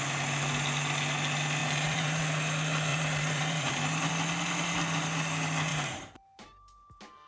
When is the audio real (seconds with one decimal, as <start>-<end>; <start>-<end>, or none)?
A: 0.0-1.6; 2.2-2.9; 4.1-5.7; 6.5-7.3